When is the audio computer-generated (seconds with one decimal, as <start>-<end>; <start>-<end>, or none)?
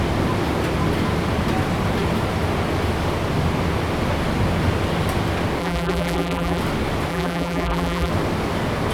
5.6-6.6; 7.1-8.1